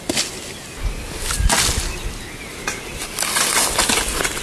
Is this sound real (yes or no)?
yes